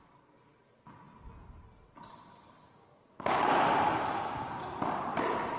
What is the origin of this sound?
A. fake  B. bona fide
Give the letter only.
B